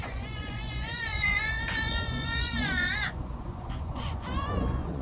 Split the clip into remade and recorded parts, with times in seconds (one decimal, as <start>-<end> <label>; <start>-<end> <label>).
0.0-5.0 remade